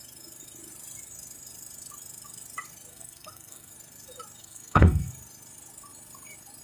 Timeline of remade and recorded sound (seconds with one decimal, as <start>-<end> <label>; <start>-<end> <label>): 0.0-2.9 recorded; 2.9-3.7 remade; 3.7-4.4 recorded; 4.4-5.1 remade; 5.1-6.6 recorded